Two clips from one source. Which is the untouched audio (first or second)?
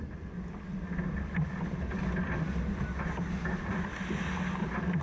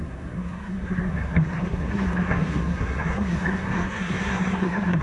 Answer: first